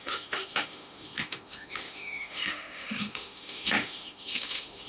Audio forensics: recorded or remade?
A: remade